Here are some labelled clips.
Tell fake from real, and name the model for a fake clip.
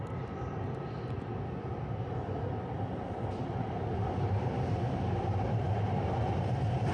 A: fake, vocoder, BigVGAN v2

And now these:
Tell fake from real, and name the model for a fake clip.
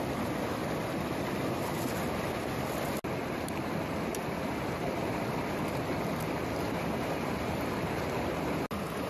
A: real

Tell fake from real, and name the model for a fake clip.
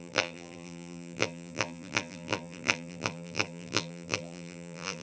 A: fake, vocoder, BigVGAN v2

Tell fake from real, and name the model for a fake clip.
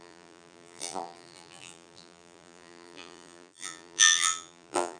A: fake, vocoder, BigVGAN v2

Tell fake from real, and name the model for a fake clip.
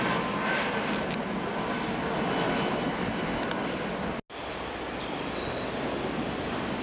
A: real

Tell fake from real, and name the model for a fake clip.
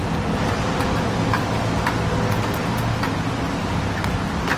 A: fake, vocoder, BigVGAN v2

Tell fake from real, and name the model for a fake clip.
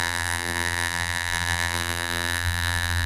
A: fake, vocoder, BigVGAN v2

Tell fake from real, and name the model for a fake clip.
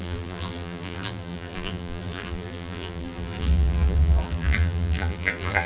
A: fake, vocoder, BigVGAN v2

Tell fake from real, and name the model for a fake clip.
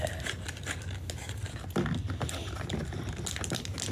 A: real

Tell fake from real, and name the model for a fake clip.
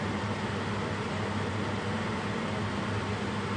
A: real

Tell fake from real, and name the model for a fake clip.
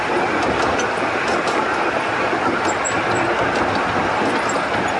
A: real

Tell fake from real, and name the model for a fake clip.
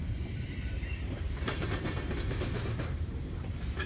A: fake, vocoder, BigVGAN v2